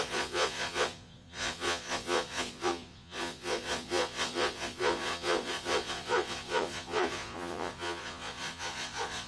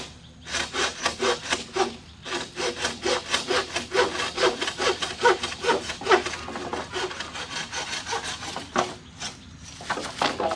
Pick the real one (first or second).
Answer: second